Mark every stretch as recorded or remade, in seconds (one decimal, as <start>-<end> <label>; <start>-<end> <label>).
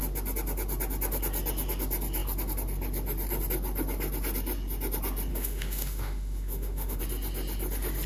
0.0-5.3 recorded; 5.3-7.0 remade; 7.0-8.1 recorded